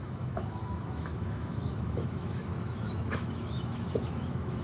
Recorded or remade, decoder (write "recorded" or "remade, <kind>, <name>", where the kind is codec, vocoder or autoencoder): remade, autoencoder, DAC-VAE